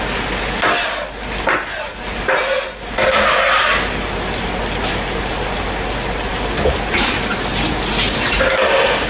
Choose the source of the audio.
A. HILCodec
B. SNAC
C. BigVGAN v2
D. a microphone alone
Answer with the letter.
D